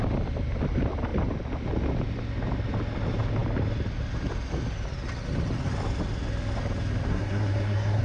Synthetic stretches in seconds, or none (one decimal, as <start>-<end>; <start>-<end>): 7.1-8.0